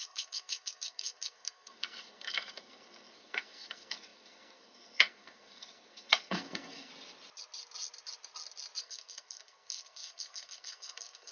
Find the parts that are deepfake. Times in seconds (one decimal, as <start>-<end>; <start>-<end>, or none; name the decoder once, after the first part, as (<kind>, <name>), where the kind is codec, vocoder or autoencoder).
0.0-6.9 (codec, SNAC); 8.8-11.3